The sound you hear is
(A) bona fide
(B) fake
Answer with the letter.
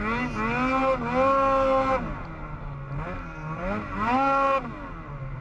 A